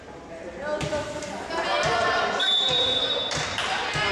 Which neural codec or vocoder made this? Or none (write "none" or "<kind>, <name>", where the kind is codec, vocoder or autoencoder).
none